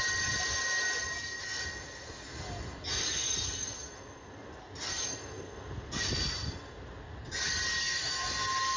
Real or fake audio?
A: real